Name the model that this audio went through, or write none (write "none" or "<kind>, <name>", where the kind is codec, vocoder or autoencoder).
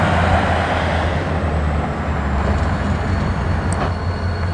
none